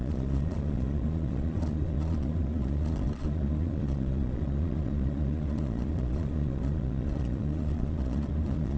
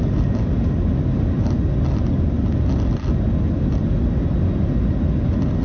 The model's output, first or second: first